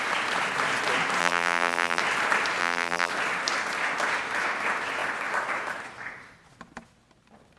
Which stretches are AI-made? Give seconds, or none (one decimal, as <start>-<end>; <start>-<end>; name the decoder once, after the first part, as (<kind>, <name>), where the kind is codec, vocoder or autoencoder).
1.2-2.0 (vocoder, BigVGAN v2); 2.6-3.1